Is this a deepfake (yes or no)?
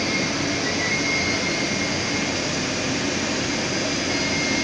no